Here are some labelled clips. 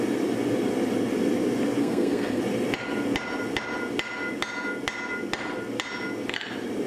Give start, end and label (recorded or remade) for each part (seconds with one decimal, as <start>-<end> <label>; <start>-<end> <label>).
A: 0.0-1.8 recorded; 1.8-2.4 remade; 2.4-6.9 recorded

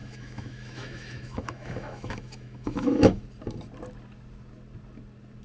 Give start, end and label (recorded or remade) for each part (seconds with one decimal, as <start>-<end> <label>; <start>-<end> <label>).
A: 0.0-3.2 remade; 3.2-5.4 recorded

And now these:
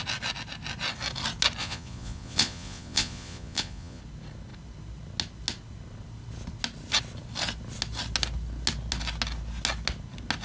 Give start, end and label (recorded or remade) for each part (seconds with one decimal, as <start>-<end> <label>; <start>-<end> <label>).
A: 0.0-1.6 recorded; 1.6-4.0 remade; 4.0-10.4 recorded

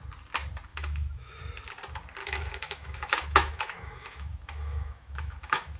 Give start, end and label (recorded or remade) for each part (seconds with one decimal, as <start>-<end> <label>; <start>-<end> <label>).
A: 0.0-0.7 recorded; 0.7-1.4 remade; 1.4-2.2 recorded; 2.2-5.8 remade

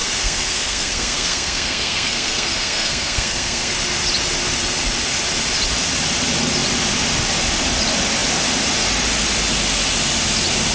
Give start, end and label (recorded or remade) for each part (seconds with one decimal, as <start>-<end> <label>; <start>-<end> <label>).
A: 0.0-3.7 remade; 3.7-10.7 recorded

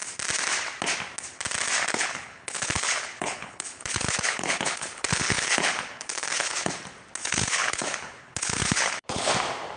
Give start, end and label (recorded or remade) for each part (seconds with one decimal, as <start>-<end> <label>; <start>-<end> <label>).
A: 0.0-1.9 recorded; 1.9-6.7 remade; 6.7-7.2 recorded; 7.2-9.3 remade; 9.3-9.8 recorded